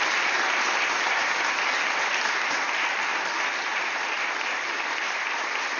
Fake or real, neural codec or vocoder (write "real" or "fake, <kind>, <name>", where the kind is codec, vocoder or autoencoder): real